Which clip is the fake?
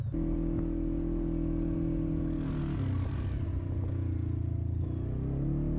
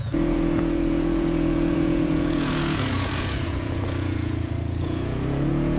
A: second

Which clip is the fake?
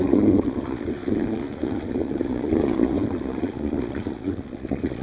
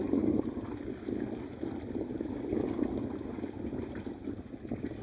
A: first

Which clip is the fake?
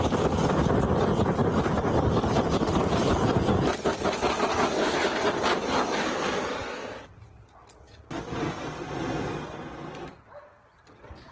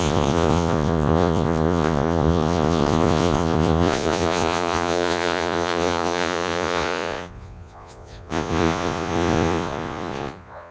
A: second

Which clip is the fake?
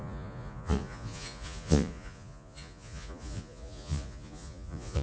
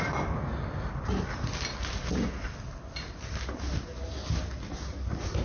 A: first